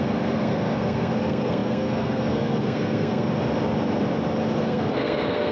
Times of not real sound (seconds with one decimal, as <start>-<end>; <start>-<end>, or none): 0.0-3.3; 4.6-5.5